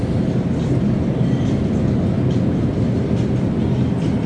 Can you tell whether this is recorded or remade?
recorded